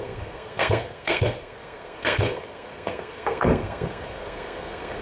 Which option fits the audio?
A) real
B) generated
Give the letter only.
B